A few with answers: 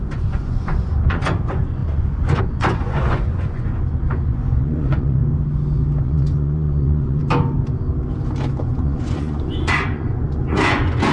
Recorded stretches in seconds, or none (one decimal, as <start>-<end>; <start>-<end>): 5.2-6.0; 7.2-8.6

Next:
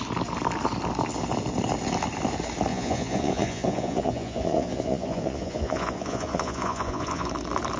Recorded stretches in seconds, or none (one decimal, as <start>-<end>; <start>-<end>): 0.0-2.7; 7.3-7.8

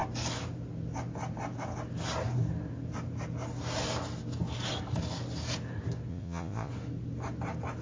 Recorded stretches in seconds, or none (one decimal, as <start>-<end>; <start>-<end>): 0.0-6.1; 6.7-7.8

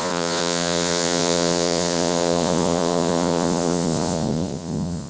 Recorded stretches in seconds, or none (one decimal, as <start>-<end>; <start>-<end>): none

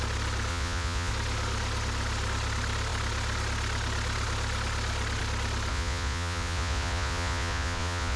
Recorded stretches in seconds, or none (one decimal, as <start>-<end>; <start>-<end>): 0.0-0.5; 1.1-5.7

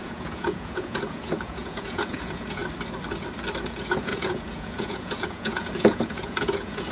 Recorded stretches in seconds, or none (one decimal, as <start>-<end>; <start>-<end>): 2.6-3.6

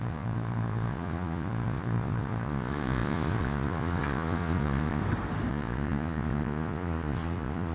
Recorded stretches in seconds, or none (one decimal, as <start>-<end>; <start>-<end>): 5.0-5.5